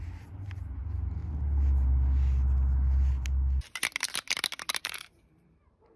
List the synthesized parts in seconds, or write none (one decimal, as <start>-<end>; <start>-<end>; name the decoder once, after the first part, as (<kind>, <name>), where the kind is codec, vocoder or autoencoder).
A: 0.0-1.2 (vocoder, BigVGAN v2); 4.8-6.0